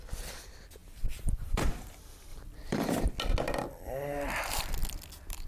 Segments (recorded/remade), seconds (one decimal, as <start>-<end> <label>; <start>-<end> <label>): 0.0-0.8 recorded; 0.8-1.7 remade; 1.7-2.3 recorded; 2.3-2.9 remade; 2.9-5.5 recorded